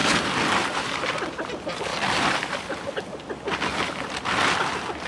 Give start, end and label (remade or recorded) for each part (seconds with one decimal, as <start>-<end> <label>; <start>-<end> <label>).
0.0-5.1 recorded